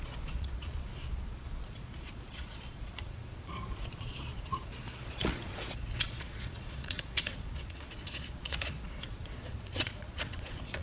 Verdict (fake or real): fake